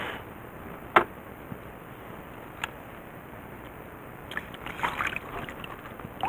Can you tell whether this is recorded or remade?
recorded